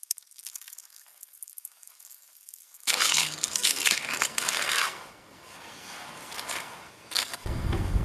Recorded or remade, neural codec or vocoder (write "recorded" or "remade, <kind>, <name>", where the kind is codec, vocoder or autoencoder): remade, codec, SNAC